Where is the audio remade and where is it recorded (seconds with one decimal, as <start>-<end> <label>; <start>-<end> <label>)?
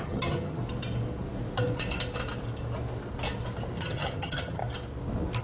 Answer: 0.0-0.6 remade; 0.6-3.8 recorded; 3.8-4.6 remade; 4.6-5.4 recorded